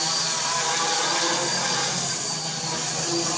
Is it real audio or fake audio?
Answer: real